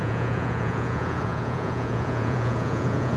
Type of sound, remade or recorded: remade